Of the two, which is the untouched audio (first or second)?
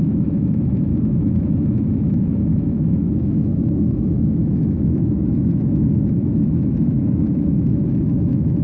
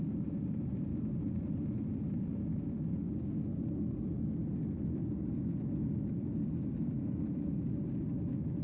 second